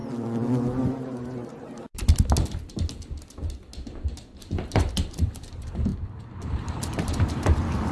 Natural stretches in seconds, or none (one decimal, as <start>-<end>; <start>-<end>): 0.0-4.4; 5.9-6.4